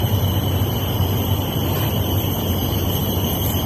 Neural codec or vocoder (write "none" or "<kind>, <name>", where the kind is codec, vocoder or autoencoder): vocoder, BigVGAN v2